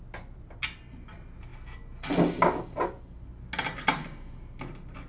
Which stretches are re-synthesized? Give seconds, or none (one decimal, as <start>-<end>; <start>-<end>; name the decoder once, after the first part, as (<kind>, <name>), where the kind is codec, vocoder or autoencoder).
none

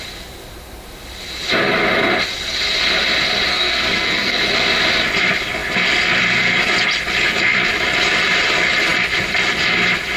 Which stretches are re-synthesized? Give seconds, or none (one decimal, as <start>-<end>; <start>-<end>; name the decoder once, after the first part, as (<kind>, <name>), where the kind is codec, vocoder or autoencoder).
3.5-4.4 (codec, SNAC)

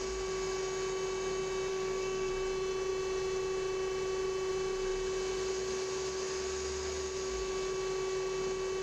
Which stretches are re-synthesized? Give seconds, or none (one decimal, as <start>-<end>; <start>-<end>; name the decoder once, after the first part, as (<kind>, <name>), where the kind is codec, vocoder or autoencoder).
1.7-2.3 (codec, SNAC)

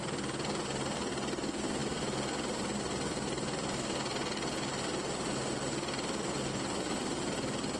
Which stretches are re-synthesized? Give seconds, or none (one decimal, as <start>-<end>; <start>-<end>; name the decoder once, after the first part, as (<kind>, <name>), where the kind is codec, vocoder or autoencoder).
none

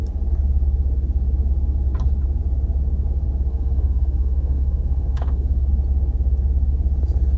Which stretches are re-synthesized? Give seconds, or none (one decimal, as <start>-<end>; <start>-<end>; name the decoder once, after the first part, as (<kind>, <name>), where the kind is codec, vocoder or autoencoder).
3.5-5.7 (codec, SNAC)